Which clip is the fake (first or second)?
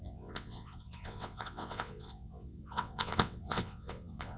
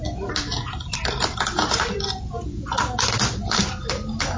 first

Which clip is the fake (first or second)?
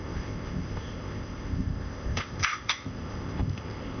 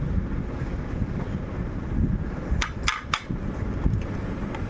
first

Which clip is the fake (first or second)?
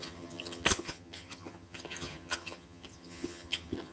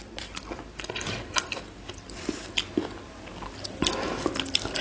first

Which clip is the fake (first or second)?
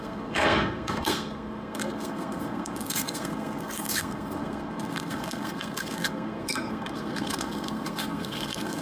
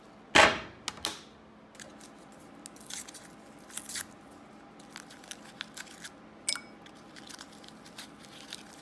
first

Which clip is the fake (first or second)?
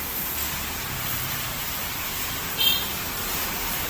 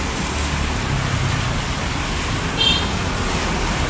first